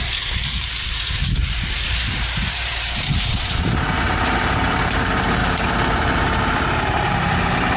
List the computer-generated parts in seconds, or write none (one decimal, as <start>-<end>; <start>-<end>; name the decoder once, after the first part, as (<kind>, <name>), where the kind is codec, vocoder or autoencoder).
0.0-5.4 (vocoder, BigVGAN v2); 6.1-7.8